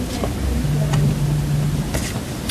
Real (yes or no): yes